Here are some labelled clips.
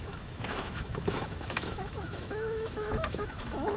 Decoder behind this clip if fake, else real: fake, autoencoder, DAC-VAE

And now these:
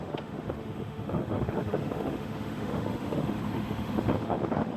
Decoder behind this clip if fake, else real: fake, autoencoder, DAC-VAE